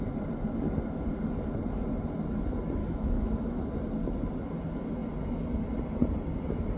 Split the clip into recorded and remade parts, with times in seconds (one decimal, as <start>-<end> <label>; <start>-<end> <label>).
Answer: 0.0-2.8 recorded; 2.8-3.6 remade; 3.6-6.8 recorded